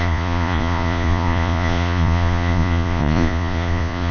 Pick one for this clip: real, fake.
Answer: fake